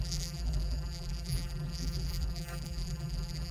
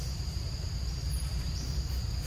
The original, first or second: second